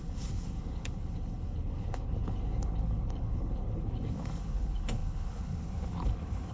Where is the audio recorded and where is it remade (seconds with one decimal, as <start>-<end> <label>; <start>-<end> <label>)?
0.0-6.5 remade